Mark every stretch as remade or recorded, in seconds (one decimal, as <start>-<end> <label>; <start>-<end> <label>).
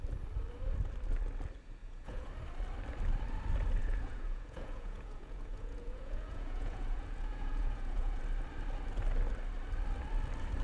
0.0-1.8 recorded; 1.8-2.3 remade; 2.3-3.8 recorded; 3.8-8.2 remade; 8.2-10.6 recorded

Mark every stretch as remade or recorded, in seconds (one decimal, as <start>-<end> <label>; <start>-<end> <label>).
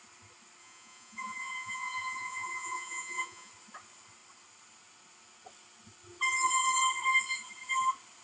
0.0-0.6 recorded; 0.6-3.5 remade; 3.5-8.2 recorded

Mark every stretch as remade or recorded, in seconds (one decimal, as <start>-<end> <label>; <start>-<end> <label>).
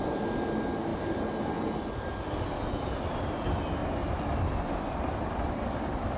0.0-6.2 recorded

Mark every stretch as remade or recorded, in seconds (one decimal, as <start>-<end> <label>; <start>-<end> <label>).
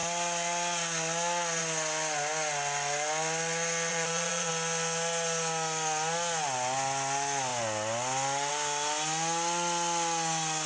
0.0-3.9 recorded; 3.9-4.5 remade; 4.5-10.7 recorded